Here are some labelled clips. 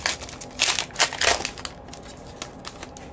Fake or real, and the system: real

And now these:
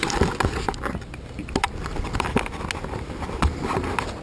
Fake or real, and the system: real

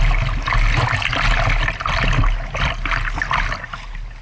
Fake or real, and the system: real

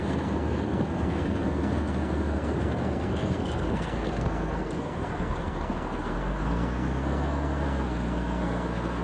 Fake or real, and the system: fake, codec, SNAC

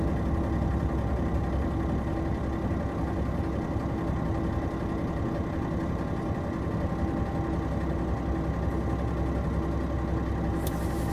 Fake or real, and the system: real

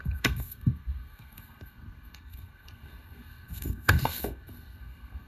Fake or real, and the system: fake, codec, SNAC